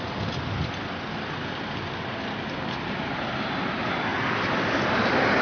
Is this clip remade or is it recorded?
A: recorded